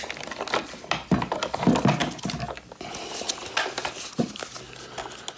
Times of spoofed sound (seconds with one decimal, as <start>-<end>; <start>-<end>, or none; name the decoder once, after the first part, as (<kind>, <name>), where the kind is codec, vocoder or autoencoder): none